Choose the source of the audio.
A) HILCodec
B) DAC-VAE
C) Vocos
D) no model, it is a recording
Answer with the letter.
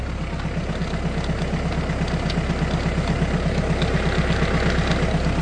D